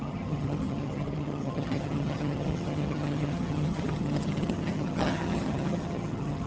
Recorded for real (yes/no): no